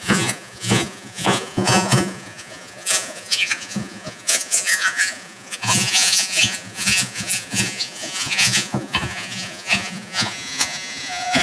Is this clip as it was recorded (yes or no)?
no